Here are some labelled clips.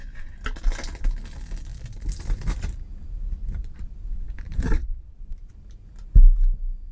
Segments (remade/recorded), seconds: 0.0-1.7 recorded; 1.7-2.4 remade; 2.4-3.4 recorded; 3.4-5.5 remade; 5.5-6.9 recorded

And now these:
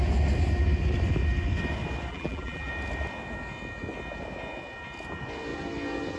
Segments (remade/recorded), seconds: 0.0-2.1 recorded; 2.1-2.7 remade; 2.7-6.2 recorded